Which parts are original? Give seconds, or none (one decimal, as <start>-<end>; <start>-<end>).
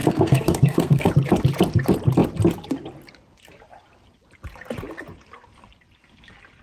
1.1-6.6